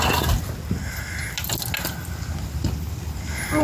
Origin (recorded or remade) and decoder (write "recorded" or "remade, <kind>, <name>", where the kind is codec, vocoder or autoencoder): recorded